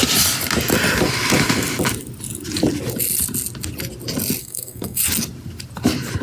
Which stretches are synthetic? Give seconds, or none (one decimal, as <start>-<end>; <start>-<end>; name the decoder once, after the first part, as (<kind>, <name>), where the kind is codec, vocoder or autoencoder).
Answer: 4.4-5.0 (codec, SNAC)